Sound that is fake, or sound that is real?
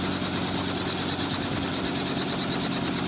real